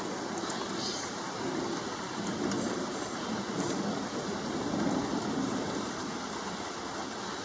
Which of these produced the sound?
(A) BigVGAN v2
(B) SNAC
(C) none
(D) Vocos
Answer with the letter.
C